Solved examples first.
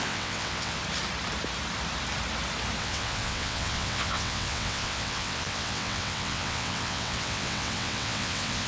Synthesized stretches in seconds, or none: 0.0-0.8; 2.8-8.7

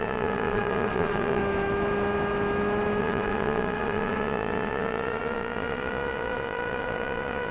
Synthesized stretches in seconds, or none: 0.0-1.4; 3.0-7.5